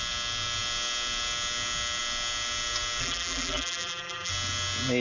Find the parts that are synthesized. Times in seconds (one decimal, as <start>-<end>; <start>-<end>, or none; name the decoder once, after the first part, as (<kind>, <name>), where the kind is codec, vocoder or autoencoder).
3.0-4.3 (vocoder, BigVGAN v2)